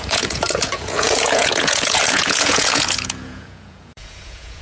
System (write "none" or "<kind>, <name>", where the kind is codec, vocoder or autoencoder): vocoder, Vocos